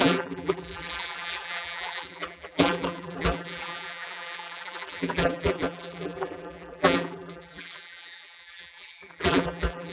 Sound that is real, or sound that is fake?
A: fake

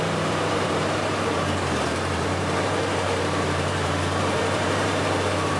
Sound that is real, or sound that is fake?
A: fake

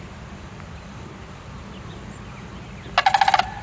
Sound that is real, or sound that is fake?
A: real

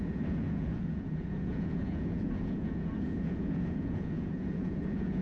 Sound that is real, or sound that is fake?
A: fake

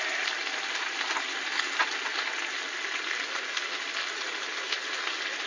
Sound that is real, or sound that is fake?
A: real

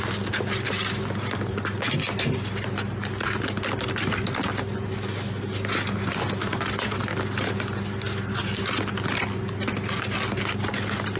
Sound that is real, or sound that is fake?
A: real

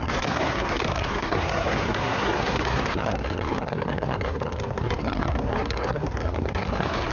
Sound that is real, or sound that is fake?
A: fake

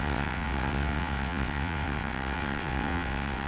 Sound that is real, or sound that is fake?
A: fake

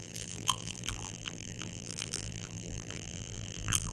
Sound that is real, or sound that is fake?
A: fake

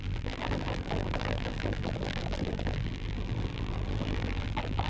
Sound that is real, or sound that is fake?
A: fake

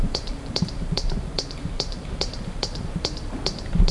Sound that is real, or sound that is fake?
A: fake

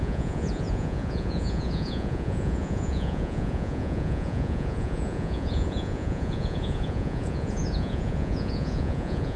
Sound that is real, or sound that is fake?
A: fake